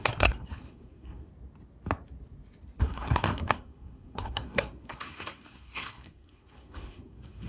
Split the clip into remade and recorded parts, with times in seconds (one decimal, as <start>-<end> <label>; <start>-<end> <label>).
0.0-1.3 remade; 1.3-2.8 recorded; 2.8-7.5 remade